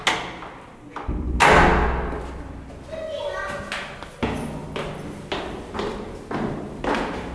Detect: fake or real real